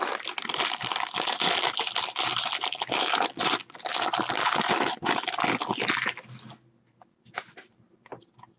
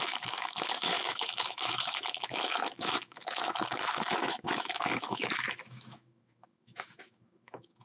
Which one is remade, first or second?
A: second